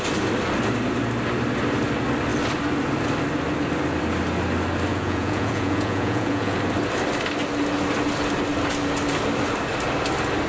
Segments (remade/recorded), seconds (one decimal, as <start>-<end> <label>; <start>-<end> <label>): 0.0-4.9 recorded; 4.9-6.6 remade; 6.6-10.5 recorded